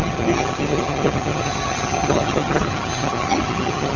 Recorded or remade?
remade